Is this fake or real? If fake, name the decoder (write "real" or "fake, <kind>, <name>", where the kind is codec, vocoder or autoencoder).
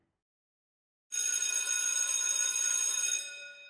real